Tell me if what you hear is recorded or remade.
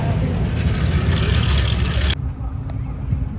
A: recorded